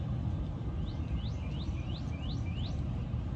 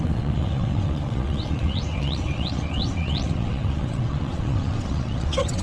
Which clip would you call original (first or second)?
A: first